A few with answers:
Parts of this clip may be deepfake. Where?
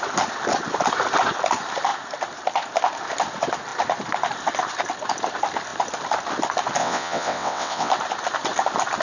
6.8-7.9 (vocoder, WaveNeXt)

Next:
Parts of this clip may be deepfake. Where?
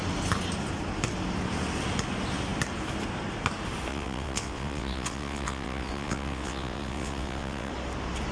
3.9-7.7 (vocoder, WaveNeXt)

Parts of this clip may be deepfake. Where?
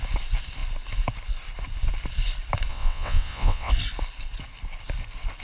2.7-3.7 (vocoder, WaveNeXt)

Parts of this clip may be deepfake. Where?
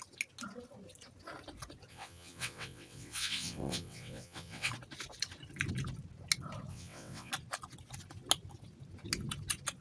1.9-4.7 (vocoder, WaveNeXt); 6.7-7.3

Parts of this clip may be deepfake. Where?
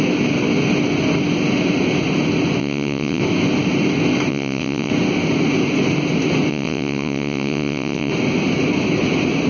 2.6-3.2 (vocoder, WaveNeXt); 4.3-4.9; 6.5-8.1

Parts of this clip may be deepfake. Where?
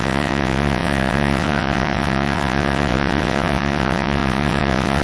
0.0-5.0 (vocoder, WaveNeXt)